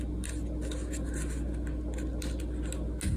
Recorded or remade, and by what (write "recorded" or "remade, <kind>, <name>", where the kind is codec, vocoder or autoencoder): recorded